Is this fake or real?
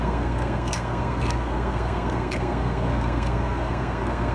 fake